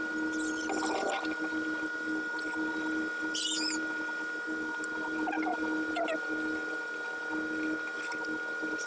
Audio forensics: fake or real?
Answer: real